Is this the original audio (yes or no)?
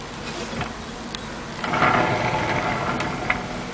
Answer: yes